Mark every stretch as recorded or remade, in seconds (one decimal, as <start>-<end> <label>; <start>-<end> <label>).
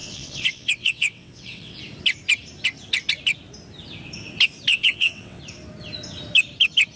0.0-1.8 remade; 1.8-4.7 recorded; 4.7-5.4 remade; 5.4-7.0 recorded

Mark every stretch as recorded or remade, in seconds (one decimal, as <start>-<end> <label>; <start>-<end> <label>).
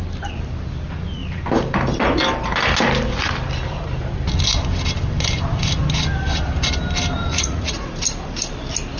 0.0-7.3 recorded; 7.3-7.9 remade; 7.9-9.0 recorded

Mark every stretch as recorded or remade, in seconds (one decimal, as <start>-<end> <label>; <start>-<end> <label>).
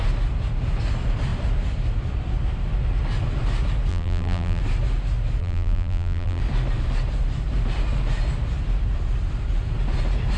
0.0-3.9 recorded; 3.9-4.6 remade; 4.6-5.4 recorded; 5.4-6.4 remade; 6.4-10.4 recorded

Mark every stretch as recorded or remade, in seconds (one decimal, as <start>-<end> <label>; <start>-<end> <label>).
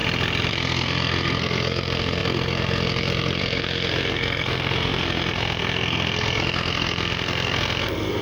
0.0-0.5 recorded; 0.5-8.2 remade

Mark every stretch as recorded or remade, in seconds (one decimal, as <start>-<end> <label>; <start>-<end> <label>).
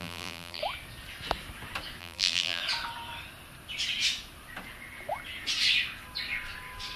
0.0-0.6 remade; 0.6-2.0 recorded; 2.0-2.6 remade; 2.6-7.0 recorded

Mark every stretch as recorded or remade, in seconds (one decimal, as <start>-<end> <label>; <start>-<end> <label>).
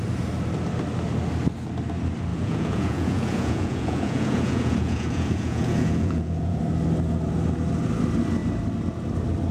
0.0-2.3 recorded; 2.3-6.6 remade; 6.6-9.5 recorded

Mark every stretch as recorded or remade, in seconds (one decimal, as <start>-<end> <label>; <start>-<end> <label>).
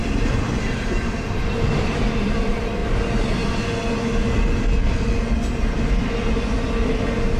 0.0-2.8 remade; 2.8-7.4 recorded